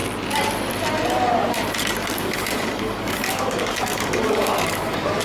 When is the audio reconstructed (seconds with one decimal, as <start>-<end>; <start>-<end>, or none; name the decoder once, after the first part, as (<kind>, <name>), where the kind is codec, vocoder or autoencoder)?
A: 2.0-5.2 (codec, DAC)